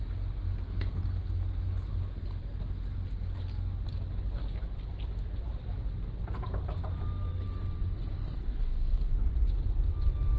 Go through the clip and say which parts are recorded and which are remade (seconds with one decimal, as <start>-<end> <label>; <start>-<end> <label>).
0.0-8.2 recorded; 8.2-9.1 remade; 9.1-10.4 recorded